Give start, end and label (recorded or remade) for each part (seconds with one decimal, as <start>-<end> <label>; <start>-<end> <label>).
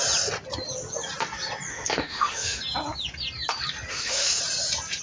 0.0-1.7 recorded; 1.7-2.6 remade; 2.6-3.9 recorded; 3.9-4.4 remade; 4.4-5.0 recorded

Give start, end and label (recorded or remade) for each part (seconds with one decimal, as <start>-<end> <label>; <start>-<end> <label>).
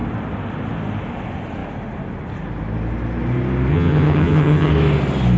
0.0-3.7 recorded; 3.7-4.7 remade; 4.7-5.4 recorded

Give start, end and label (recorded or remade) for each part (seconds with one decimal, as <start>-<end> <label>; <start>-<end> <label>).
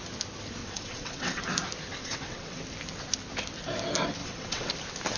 0.0-0.6 recorded; 0.6-1.4 remade; 1.4-2.0 recorded; 2.0-2.6 remade; 2.6-4.2 recorded; 4.2-4.7 remade; 4.7-5.2 recorded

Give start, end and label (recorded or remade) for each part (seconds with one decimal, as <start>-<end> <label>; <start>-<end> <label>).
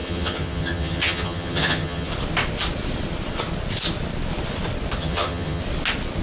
0.0-2.1 remade; 2.1-5.0 recorded; 5.0-5.6 remade; 5.6-6.2 recorded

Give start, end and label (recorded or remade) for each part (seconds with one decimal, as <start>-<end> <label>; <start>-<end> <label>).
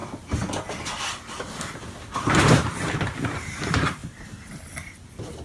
0.0-2.1 recorded; 2.1-4.0 remade; 4.0-5.4 recorded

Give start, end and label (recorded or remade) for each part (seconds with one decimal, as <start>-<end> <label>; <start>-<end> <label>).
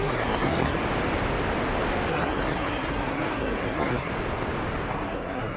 0.0-0.8 remade; 0.8-2.1 recorded; 2.1-4.1 remade; 4.1-4.9 recorded; 4.9-5.6 remade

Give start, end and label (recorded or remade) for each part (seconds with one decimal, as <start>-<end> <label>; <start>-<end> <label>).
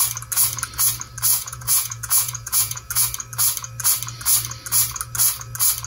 0.0-1.3 recorded; 1.3-2.9 remade; 2.9-5.9 recorded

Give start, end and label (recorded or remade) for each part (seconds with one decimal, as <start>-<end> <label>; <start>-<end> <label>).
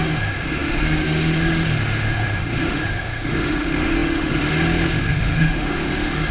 0.0-6.3 remade